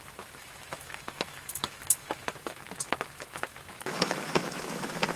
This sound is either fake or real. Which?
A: fake